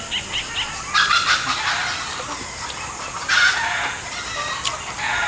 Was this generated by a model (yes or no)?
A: no